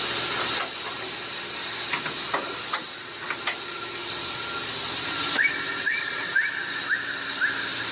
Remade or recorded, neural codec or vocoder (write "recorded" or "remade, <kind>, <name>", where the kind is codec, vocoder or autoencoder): recorded